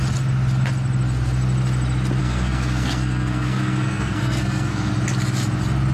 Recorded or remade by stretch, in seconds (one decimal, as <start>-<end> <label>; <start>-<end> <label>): 0.0-2.2 recorded; 2.2-4.9 remade; 4.9-5.9 recorded